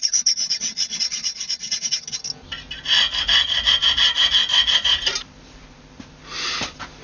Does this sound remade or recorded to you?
recorded